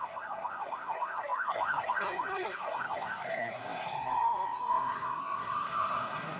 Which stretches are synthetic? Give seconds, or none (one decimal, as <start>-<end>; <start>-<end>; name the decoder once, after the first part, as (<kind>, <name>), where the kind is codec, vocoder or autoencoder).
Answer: 0.0-6.4 (codec, SNAC)

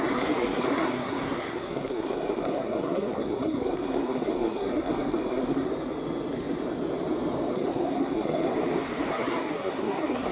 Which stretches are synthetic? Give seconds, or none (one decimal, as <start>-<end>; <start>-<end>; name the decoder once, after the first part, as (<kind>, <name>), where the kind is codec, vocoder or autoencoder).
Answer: 0.0-5.7 (codec, SNAC); 7.5-8.5; 9.1-10.3

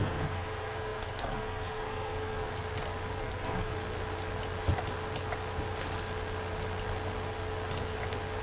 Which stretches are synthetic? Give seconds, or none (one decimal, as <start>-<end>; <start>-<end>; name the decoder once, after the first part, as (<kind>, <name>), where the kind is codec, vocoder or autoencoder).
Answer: 0.0-2.5 (codec, SNAC); 3.2-3.7